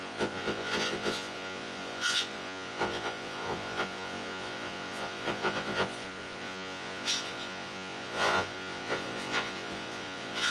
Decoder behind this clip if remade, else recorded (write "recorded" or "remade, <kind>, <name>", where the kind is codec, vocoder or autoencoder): remade, vocoder, Vocos